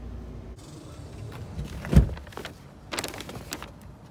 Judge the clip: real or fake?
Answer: real